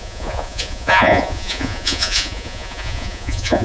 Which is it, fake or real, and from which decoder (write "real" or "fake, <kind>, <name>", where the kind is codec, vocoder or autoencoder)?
fake, vocoder, Vocos